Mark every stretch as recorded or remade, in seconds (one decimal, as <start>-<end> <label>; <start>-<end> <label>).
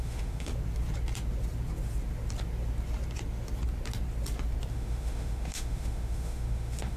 0.0-0.5 remade; 0.5-4.7 recorded; 4.7-7.0 remade